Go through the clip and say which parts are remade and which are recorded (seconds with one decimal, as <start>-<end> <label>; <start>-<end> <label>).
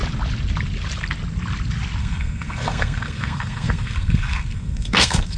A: 0.0-2.0 recorded; 2.0-5.4 remade